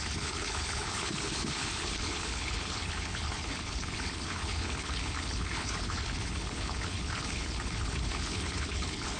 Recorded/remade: remade